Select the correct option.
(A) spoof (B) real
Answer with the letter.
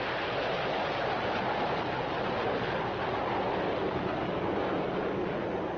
B